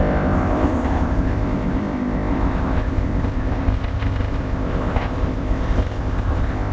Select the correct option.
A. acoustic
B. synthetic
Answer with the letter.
B